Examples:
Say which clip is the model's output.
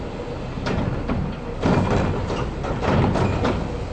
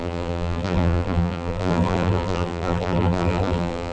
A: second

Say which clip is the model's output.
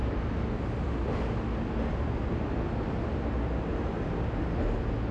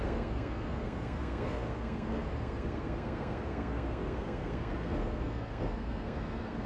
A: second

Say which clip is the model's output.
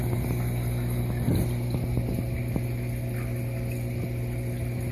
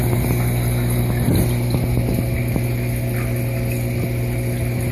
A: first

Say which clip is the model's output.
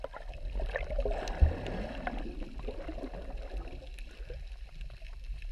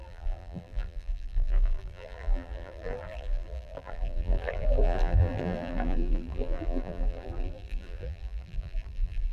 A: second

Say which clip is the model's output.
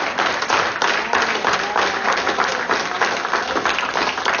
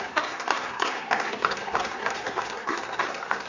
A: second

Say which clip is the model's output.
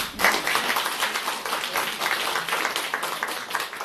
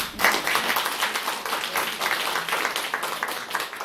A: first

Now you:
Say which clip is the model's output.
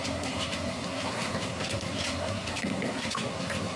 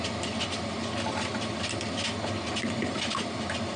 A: first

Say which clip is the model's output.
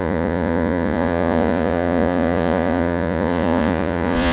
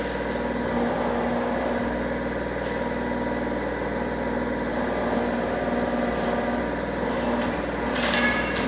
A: first